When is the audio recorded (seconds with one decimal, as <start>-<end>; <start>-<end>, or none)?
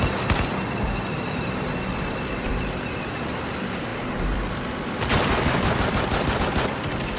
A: 0.0-7.2